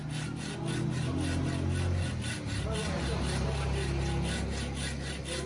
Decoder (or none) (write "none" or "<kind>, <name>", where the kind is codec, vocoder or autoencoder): none